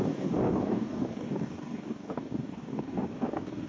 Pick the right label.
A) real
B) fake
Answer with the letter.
B